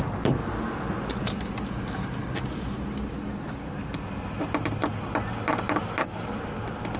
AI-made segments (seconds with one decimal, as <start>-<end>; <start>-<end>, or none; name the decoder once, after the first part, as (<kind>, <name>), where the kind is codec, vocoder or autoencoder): none